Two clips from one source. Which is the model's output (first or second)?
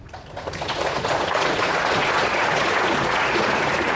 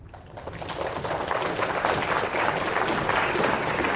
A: first